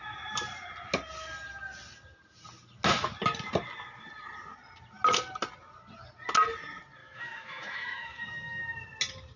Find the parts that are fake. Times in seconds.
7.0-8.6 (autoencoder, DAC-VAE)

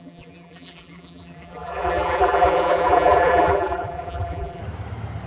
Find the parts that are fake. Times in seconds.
0.0-4.6 (vocoder, BigVGAN v2)

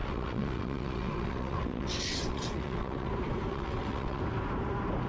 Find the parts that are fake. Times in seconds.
0.0-3.1 (vocoder, WaveNeXt); 3.5-4.2

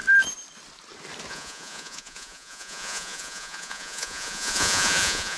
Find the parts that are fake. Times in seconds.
1.3-5.4 (vocoder, Vocos)

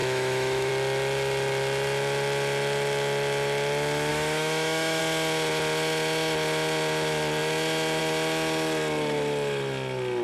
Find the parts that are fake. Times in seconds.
0.0-0.7 (autoencoder, DAC-VAE); 4.1-5.0